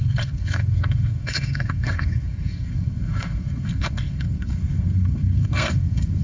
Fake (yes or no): yes